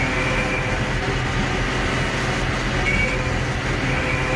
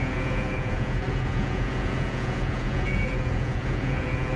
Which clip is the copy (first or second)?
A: second